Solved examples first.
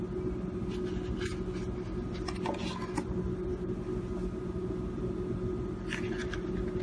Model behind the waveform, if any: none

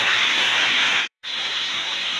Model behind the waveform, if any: codec, SNAC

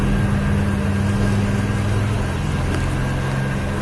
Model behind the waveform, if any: none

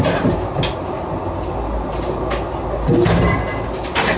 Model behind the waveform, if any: none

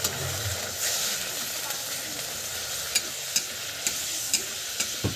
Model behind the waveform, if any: none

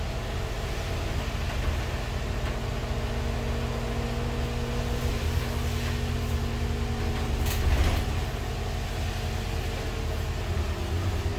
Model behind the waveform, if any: none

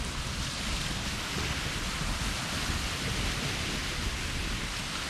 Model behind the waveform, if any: none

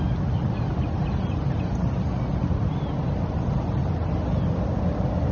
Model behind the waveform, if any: none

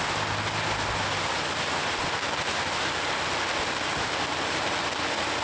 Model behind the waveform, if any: none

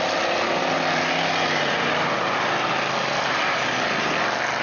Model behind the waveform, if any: none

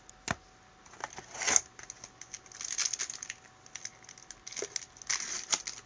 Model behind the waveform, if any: none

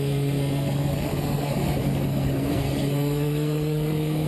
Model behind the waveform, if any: codec, SNAC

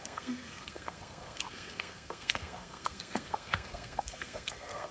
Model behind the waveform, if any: codec, SNAC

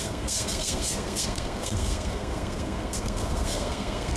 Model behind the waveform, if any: codec, SNAC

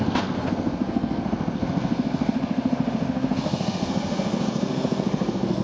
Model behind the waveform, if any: codec, SNAC